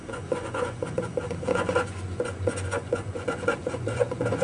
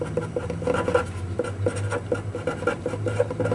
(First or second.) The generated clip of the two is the first